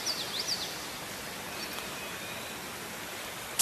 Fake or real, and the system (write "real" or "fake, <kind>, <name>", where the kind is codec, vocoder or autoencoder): real